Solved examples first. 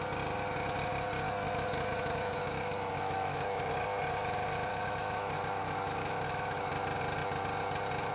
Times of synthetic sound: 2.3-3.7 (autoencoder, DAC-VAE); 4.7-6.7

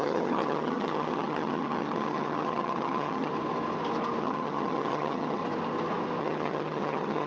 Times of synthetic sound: 0.0-3.3 (vocoder, HiFi-GAN); 4.2-5.4; 6.2-7.3

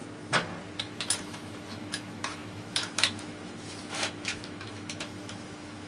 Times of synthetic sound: 0.8-5.9 (autoencoder, DAC-VAE)

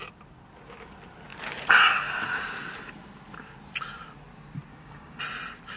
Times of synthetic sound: 4.7-5.2 (codec, DAC)

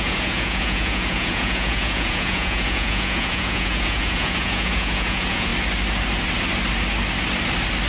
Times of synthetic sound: 0.0-5.5 (vocoder, Vocos)